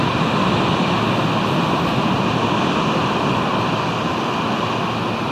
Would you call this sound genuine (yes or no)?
yes